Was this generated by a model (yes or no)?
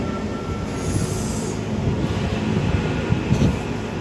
no